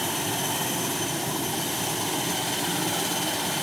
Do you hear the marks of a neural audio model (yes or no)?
no